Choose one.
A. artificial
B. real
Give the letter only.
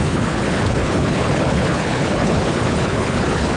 A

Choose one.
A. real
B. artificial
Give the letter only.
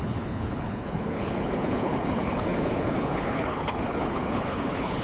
B